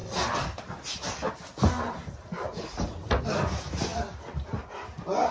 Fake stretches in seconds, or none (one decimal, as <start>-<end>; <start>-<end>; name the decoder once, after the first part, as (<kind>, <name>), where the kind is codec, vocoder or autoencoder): none